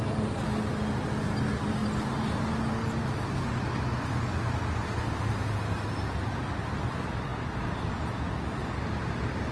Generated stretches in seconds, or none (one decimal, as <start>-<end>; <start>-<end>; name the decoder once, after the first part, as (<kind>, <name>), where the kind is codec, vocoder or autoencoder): none

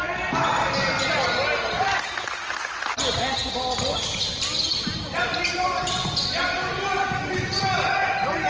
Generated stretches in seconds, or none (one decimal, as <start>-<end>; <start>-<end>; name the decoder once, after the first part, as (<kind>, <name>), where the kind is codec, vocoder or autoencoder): none

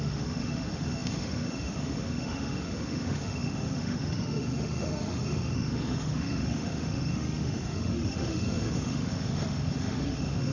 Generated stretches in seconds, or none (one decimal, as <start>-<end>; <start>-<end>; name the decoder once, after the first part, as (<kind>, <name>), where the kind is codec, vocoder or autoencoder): 0.0-10.5 (autoencoder, DAC-VAE)

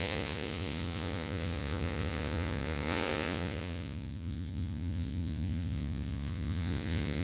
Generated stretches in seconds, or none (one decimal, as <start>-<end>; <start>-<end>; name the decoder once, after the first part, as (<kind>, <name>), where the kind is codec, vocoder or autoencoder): 0.0-7.2 (vocoder, Vocos)

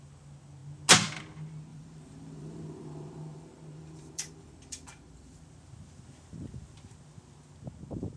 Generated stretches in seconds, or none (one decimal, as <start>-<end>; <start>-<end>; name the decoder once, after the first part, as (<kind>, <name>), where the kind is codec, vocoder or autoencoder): 1.7-5.4 (vocoder, BigVGAN v2)